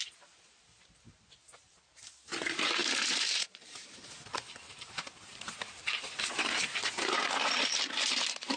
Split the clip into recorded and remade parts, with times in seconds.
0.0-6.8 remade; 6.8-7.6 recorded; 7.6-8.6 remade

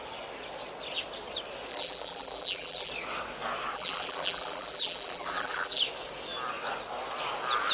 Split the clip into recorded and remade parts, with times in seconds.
0.0-1.7 recorded; 1.7-2.9 remade; 2.9-3.7 recorded; 3.7-5.8 remade; 5.8-7.7 recorded

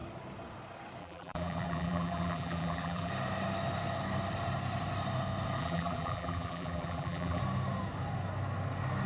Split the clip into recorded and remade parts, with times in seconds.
0.0-1.0 recorded; 1.0-3.1 remade; 3.1-5.6 recorded; 5.6-7.4 remade; 7.4-9.1 recorded

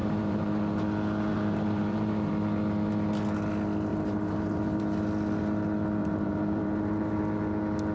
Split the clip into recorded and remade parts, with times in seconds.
0.0-0.6 remade; 0.6-1.3 recorded; 1.3-2.3 remade; 2.3-3.9 recorded; 3.9-4.8 remade; 4.8-6.0 recorded; 6.0-7.2 remade; 7.2-7.9 recorded

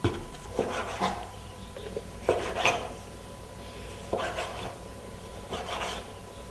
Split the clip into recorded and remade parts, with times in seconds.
0.0-0.8 recorded; 0.8-4.1 remade; 4.1-4.5 recorded; 4.5-5.8 remade; 5.8-6.5 recorded

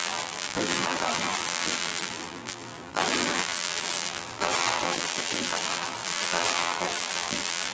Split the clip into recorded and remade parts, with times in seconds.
0.0-7.7 remade

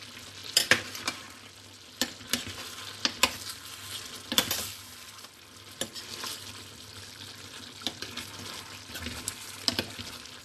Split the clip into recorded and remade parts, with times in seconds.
0.0-10.4 recorded